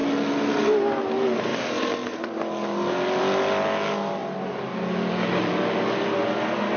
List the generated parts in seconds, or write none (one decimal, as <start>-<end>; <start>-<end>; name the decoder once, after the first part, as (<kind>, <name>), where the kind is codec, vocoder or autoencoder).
none